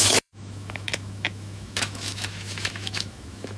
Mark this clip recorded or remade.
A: remade